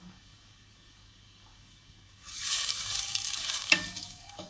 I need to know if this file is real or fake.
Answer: fake